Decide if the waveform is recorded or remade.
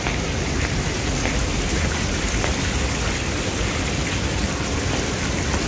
recorded